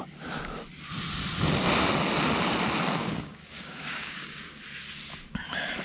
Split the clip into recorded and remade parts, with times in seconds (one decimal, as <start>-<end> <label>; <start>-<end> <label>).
0.0-3.0 recorded; 3.0-4.6 remade; 4.6-5.8 recorded